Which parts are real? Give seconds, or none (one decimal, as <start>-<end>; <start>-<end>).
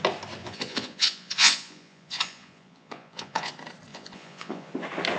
0.0-0.4; 3.5-3.9; 4.7-5.2